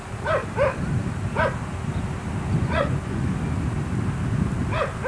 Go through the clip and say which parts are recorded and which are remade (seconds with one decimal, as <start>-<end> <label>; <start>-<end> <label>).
0.0-2.6 recorded; 2.6-3.2 remade; 3.2-5.1 recorded